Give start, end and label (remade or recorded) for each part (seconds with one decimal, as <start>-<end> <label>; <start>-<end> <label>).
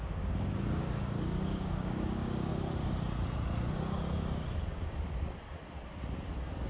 0.0-2.5 remade; 2.5-6.7 recorded